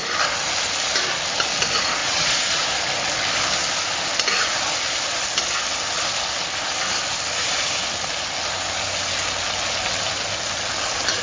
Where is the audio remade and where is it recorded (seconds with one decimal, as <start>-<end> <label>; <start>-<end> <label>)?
0.0-2.0 recorded; 2.0-2.6 remade; 2.6-11.2 recorded